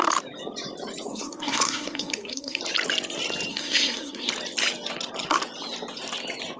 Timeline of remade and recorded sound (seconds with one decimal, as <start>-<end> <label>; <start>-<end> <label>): 0.0-1.1 recorded; 1.1-2.6 remade; 2.6-3.5 recorded; 3.5-4.3 remade; 4.3-6.6 recorded